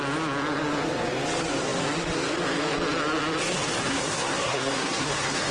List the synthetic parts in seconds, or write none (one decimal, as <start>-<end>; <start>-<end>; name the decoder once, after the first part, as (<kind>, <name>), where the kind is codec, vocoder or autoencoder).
3.9-5.5 (codec, SNAC)